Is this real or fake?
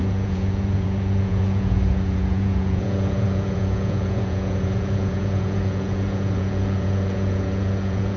fake